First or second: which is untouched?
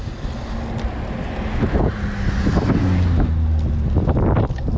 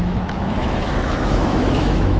first